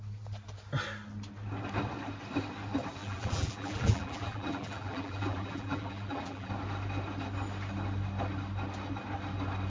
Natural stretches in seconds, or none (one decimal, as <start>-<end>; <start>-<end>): 0.0-3.0; 6.5-9.7